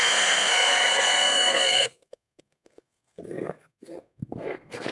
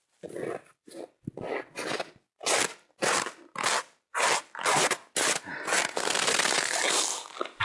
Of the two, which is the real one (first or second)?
second